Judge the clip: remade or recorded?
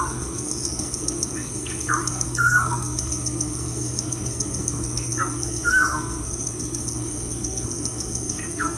remade